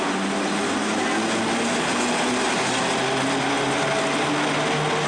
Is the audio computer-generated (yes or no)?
no